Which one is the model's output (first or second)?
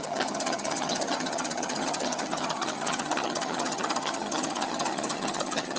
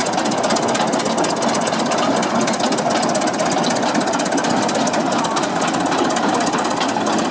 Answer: first